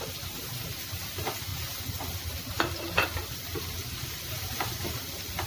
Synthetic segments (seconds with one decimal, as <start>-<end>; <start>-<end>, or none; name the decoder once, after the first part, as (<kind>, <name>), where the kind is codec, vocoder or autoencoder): none